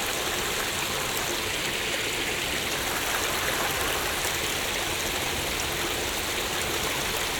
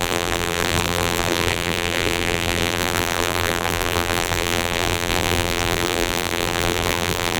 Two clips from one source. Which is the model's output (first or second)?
second